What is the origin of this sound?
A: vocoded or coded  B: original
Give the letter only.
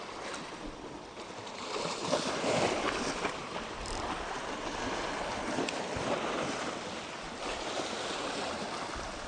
A